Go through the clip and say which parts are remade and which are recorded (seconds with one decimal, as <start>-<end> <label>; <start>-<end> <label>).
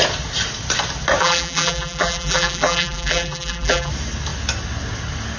0.0-1.2 recorded; 1.2-3.9 remade; 3.9-5.4 recorded